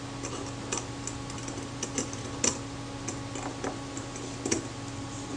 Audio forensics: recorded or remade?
recorded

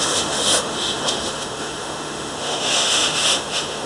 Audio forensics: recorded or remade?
remade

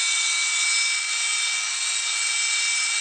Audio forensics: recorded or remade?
recorded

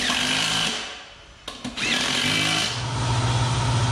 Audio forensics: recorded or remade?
recorded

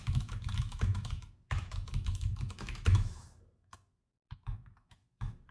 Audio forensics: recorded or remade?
remade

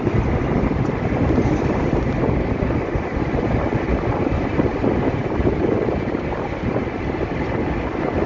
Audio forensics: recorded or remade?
recorded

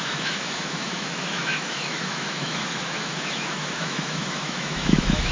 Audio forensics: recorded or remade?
remade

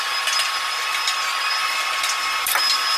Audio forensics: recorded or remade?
recorded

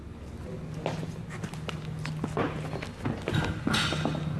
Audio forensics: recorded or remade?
recorded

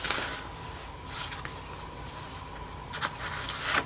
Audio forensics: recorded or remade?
recorded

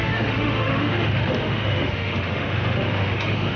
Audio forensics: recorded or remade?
remade